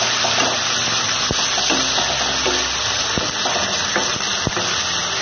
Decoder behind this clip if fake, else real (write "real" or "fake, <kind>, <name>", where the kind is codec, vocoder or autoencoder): real